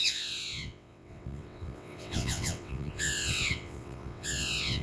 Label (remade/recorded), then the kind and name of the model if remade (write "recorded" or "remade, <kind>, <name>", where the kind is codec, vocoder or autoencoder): remade, vocoder, WaveNeXt